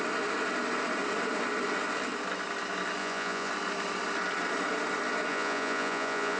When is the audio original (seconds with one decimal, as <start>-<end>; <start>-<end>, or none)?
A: 0.0-3.0; 3.5-5.3